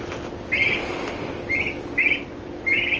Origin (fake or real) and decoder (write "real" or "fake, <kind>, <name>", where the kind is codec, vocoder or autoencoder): real